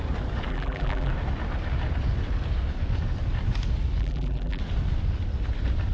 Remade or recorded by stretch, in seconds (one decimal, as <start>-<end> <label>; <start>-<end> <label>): 0.0-0.5 recorded; 0.5-1.1 remade; 1.1-4.0 recorded; 4.0-4.6 remade; 4.6-5.9 recorded